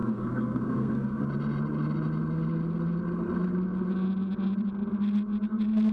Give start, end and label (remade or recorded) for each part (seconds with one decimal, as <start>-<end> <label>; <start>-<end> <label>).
0.0-1.2 remade; 1.2-5.9 recorded